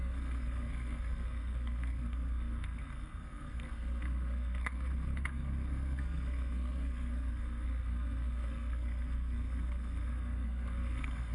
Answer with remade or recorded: remade